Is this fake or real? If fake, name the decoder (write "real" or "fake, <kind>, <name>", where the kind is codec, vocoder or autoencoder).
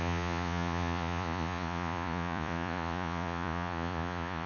fake, vocoder, Vocos